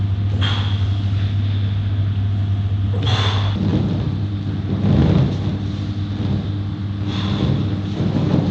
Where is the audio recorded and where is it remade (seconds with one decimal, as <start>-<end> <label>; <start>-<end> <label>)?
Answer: 0.0-8.5 recorded

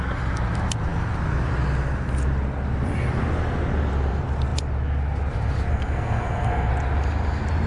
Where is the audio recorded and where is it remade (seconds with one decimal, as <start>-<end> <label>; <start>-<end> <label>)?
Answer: 0.0-5.7 recorded; 5.7-6.7 remade; 6.7-7.7 recorded

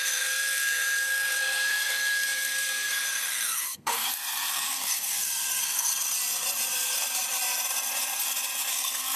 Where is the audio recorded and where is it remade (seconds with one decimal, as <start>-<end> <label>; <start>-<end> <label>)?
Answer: 0.0-5.9 remade; 5.9-8.7 recorded; 8.7-9.2 remade

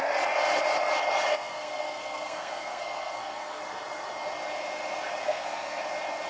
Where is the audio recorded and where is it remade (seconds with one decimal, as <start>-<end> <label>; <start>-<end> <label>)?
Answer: 0.0-1.3 recorded; 1.3-3.6 remade; 3.6-5.2 recorded; 5.2-5.8 remade; 5.8-6.3 recorded

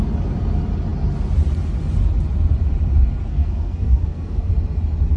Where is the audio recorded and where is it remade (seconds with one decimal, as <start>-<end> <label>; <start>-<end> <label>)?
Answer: 0.0-3.3 recorded; 3.3-4.5 remade; 4.5-5.2 recorded

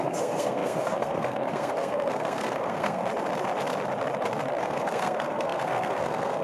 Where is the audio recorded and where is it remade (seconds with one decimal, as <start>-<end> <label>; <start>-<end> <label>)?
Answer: 0.0-3.0 remade; 3.0-4.6 recorded; 4.6-6.4 remade